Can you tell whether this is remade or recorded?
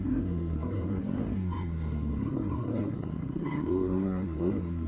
remade